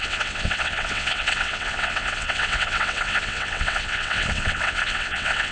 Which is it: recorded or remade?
remade